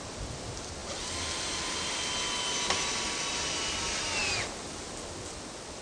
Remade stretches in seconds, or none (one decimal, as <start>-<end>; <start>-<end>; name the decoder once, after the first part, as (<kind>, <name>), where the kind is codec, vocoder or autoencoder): none